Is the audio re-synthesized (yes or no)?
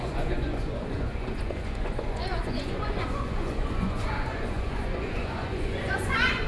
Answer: yes